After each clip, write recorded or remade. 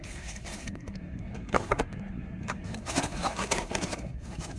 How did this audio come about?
remade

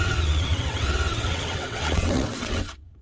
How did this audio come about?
remade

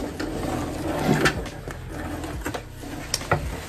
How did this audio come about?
recorded